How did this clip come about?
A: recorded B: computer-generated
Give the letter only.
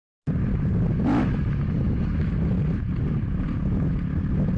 A